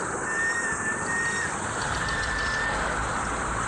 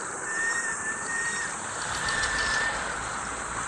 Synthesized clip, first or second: second